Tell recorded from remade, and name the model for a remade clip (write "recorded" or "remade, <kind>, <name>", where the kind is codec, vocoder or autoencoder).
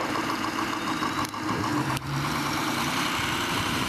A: remade, vocoder, BigVGAN v2